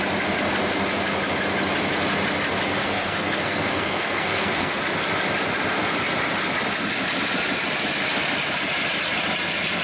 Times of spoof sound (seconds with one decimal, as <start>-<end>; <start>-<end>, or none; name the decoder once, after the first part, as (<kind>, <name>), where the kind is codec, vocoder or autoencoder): 2.8-4.8 (codec, SNAC)